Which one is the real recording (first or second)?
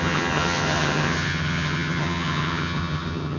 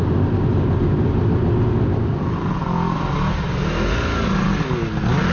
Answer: second